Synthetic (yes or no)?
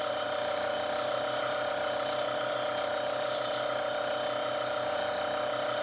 no